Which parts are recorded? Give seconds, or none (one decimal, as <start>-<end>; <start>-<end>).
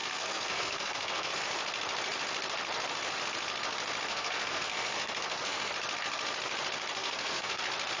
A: 1.3-4.1; 5.7-7.0; 7.6-8.0